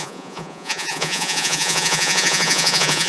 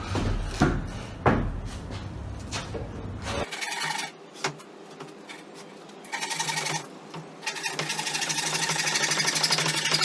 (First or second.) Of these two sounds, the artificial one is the first